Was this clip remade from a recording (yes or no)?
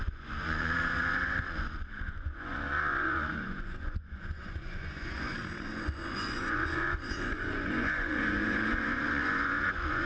yes